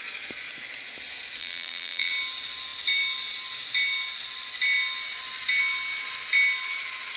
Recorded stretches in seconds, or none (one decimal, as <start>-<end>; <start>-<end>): 0.0-1.4; 2.1-7.2